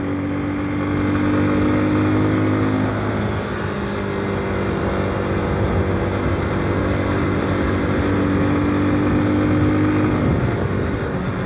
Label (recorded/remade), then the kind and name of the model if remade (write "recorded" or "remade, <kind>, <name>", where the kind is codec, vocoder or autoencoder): recorded